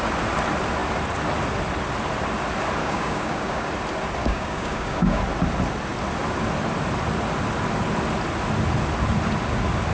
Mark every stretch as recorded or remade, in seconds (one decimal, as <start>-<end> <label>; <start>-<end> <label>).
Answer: 0.0-2.8 recorded; 2.8-3.7 remade; 3.7-4.2 recorded; 4.2-5.2 remade; 5.2-9.9 recorded